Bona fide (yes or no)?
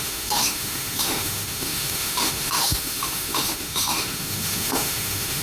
no